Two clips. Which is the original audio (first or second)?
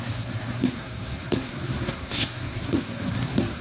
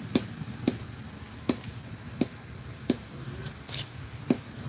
second